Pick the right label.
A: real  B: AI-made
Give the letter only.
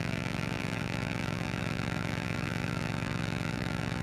B